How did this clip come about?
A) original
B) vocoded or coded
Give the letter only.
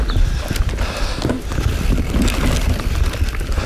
A